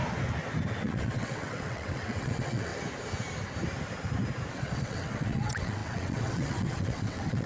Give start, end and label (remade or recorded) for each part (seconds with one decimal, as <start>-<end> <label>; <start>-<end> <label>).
0.0-0.7 recorded; 0.7-2.7 remade; 2.7-4.5 recorded; 4.5-7.5 remade